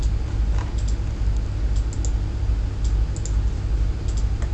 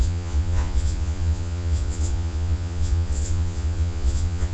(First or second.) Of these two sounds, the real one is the first